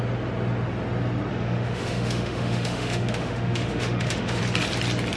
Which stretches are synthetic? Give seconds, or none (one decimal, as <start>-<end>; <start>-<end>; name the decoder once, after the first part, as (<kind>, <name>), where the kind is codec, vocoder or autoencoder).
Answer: 1.3-4.4 (autoencoder, DAC-VAE)